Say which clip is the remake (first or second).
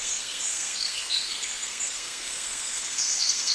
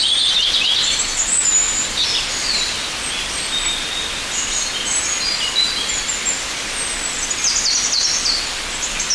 first